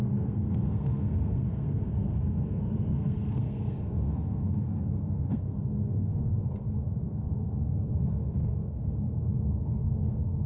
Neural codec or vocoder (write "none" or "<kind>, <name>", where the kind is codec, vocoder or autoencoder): codec, SNAC